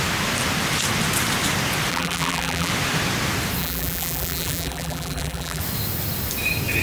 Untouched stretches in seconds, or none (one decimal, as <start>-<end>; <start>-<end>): 0.0-1.9; 2.7-3.6; 5.6-6.8